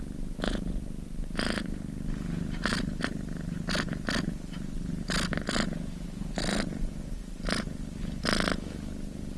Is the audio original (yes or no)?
yes